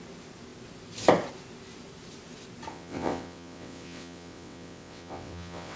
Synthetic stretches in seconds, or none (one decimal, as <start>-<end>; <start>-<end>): 2.7-5.8